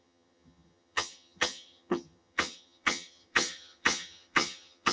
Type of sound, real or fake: fake